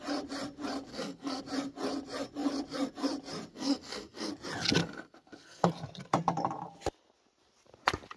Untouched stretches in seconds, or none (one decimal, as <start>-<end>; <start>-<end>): 0.0-0.9; 1.4-3.5; 4.3-4.8; 5.7-8.2